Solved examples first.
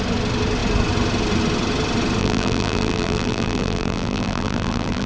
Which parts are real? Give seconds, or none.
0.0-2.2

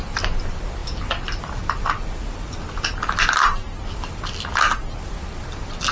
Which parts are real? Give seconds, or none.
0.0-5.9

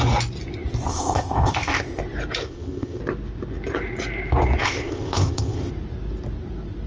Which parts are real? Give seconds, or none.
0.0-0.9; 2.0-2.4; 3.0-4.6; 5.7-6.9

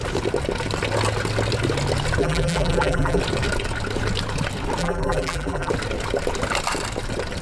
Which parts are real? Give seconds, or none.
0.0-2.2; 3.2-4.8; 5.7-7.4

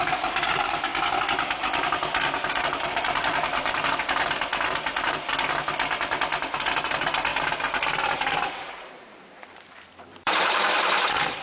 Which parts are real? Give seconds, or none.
0.9-2.6; 4.5-6.8; 7.3-8.1